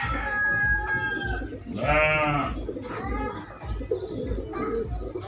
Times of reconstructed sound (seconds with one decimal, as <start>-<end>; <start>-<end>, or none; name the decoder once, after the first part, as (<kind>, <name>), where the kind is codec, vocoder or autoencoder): none